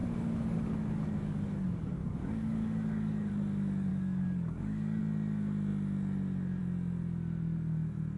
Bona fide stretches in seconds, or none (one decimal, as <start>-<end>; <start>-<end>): 3.3-3.9; 5.0-8.2